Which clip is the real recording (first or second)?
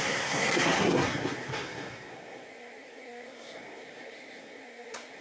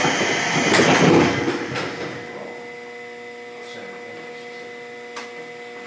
second